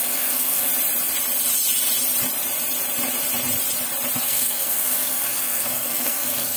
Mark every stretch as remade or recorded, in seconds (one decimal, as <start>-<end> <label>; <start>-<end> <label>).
0.0-0.7 remade; 0.7-4.2 recorded; 4.2-6.6 remade

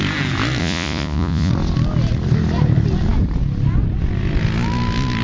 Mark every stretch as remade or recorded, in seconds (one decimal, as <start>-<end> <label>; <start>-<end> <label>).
0.0-0.6 recorded; 0.6-1.5 remade; 1.5-5.2 recorded

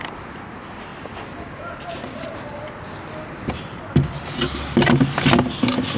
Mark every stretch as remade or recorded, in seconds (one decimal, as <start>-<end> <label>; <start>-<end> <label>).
0.0-6.0 recorded

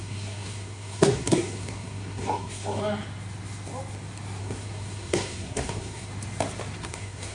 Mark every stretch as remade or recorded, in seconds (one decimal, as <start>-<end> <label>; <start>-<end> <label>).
0.0-2.8 remade; 2.8-4.4 recorded; 4.4-6.1 remade; 6.1-6.8 recorded; 6.8-7.3 remade

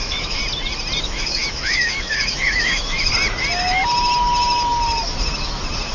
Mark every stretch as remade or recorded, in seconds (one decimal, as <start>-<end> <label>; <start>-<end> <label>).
0.0-0.4 remade; 0.4-1.0 recorded; 1.0-3.1 remade; 3.1-5.9 recorded

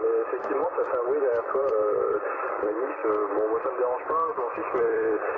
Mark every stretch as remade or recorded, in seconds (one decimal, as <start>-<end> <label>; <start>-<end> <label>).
0.0-3.0 remade; 3.0-3.6 recorded; 3.6-4.3 remade; 4.3-5.4 recorded

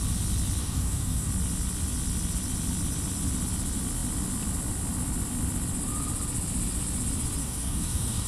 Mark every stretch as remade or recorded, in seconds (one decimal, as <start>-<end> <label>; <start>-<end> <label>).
0.0-0.6 recorded; 0.6-1.3 remade; 1.3-7.4 recorded; 7.4-8.3 remade